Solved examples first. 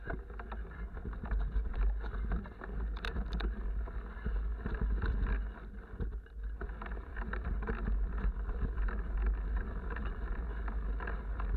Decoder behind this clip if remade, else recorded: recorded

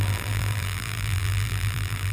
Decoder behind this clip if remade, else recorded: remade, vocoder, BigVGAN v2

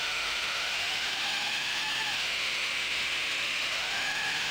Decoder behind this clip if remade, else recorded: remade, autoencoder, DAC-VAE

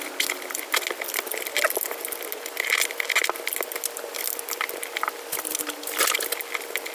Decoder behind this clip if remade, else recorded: recorded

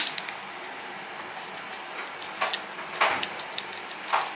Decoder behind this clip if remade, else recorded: recorded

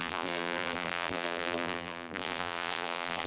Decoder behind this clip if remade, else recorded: remade, vocoder, BigVGAN v2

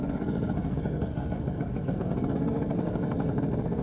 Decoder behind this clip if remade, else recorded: remade, codec, SNAC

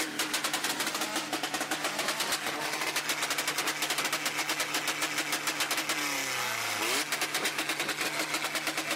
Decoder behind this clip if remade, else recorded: recorded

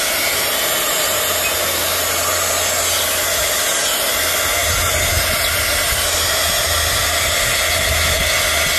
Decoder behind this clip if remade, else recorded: recorded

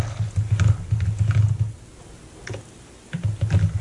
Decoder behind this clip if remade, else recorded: recorded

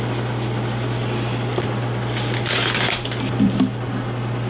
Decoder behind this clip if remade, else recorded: recorded